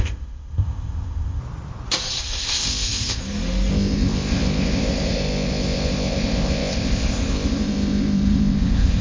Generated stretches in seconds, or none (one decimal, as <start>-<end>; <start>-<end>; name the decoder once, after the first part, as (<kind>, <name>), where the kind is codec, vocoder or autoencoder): 0.0-1.4 (codec, ZipCodec); 2.2-3.2; 3.7-9.0